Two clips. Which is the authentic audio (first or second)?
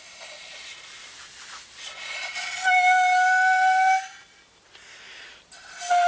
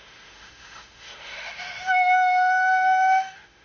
first